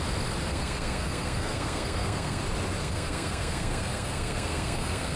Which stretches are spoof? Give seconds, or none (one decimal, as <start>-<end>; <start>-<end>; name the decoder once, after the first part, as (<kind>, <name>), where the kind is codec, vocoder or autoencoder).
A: 0.5-2.4 (codec, SNAC); 2.8-5.2